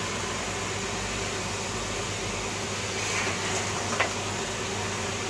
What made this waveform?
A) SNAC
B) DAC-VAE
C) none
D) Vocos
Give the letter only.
C